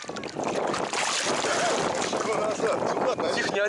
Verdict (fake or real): real